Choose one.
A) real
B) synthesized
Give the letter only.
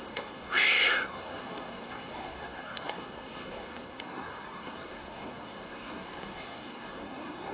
B